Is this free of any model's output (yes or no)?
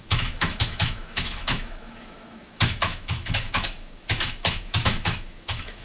no